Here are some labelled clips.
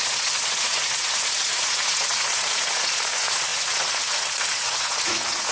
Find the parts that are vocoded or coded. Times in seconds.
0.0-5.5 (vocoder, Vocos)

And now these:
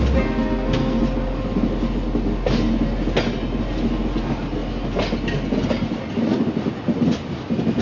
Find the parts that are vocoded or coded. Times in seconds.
0.4-1.0 (codec, SNAC)

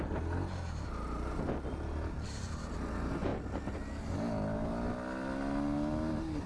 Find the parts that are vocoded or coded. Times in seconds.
none

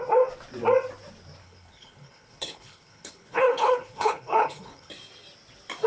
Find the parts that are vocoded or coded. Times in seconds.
1.4-4.9 (codec, HILCodec)

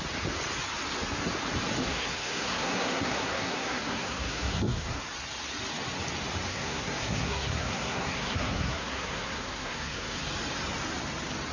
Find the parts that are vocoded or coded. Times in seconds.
1.8-5.0 (codec, SNAC); 6.5-10.2